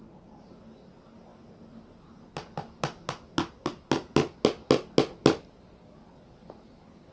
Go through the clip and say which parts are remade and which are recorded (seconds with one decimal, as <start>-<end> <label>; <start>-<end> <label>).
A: 0.0-7.1 recorded